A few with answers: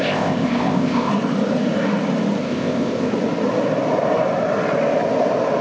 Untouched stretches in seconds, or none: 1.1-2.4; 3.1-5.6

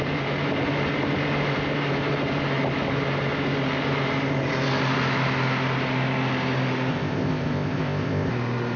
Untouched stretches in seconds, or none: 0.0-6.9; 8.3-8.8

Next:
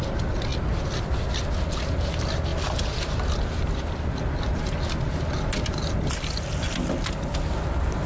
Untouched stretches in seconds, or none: 0.0-8.1